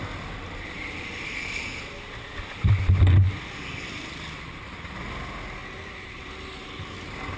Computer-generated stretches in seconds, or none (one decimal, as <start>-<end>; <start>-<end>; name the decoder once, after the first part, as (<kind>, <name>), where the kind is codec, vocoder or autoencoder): none